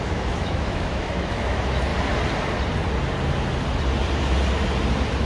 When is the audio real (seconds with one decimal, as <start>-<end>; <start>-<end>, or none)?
1.9-5.2

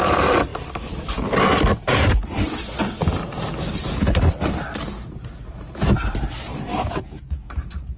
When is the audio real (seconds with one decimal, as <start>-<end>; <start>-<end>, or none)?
0.0-6.7

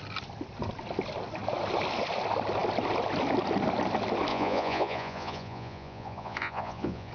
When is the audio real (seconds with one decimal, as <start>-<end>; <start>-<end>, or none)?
0.0-4.3

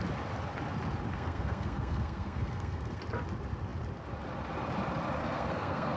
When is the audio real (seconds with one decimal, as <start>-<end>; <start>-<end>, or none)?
0.0-1.1; 3.0-5.2